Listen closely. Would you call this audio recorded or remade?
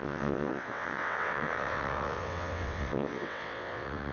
remade